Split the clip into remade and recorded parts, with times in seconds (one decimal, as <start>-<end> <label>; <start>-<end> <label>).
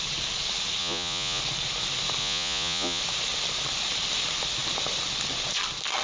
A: 0.0-0.8 recorded; 0.8-1.4 remade; 1.4-2.2 recorded; 2.2-3.0 remade; 3.0-6.0 recorded